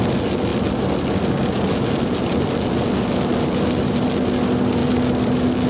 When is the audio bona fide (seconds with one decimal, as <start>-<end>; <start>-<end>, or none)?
0.0-5.7